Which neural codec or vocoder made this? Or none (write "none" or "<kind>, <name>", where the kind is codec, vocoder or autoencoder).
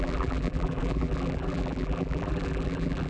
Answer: vocoder, BigVGAN v2